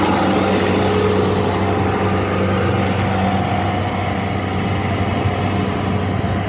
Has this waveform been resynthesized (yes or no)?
no